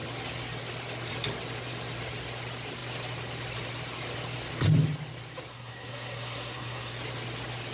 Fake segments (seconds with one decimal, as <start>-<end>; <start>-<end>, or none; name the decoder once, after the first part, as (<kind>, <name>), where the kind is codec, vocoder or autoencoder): 5.5-6.9 (codec, SNAC)